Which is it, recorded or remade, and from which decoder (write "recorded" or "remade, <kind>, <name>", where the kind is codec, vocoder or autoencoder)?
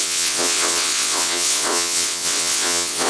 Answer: remade, vocoder, WaveNeXt